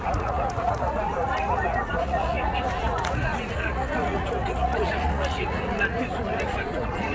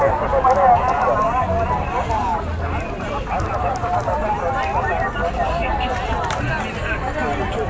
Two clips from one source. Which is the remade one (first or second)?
first